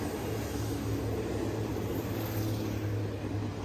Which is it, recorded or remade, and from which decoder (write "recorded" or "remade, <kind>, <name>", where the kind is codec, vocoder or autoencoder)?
recorded